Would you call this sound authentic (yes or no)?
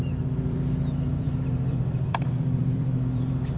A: no